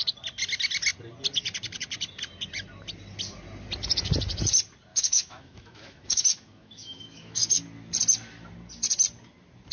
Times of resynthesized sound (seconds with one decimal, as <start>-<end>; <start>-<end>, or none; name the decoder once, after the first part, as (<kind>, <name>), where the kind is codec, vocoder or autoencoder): 4.9-7.6 (autoencoder, DAC-VAE)